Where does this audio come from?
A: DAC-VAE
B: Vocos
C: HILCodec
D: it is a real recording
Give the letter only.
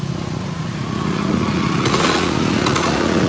B